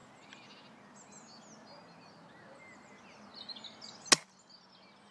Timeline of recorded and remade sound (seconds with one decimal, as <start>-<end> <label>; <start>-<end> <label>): 0.0-5.1 recorded